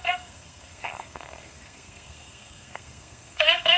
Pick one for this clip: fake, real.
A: fake